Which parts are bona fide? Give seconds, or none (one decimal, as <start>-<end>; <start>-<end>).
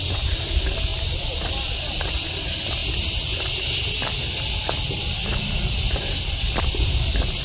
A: 0.0-7.4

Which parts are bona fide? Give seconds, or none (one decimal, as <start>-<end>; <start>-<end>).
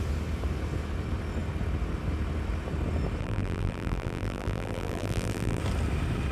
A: 0.0-3.2; 5.6-6.3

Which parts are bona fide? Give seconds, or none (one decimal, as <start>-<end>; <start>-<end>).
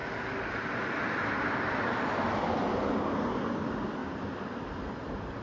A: 2.5-4.0; 5.0-5.4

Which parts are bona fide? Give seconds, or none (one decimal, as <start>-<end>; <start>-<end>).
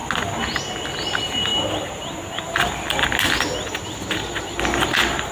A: 0.0-1.5; 2.4-5.3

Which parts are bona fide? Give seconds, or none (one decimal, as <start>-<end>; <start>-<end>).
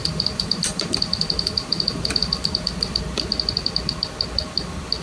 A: 3.0-5.0